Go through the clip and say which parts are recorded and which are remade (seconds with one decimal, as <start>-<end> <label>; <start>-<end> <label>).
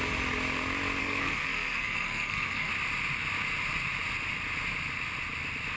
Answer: 0.0-1.0 recorded; 1.0-2.7 remade; 2.7-5.8 recorded